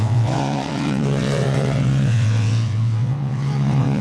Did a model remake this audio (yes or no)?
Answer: yes